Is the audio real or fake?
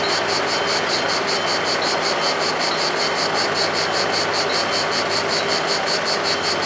real